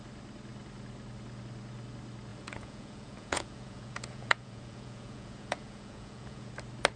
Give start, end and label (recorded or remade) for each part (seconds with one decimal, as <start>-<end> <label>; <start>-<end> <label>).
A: 0.0-2.3 recorded; 2.3-6.5 remade; 6.5-7.0 recorded